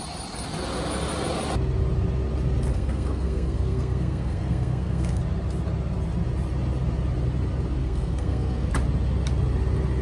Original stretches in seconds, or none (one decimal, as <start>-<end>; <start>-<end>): 0.0-2.7; 5.2-7.8; 8.7-10.0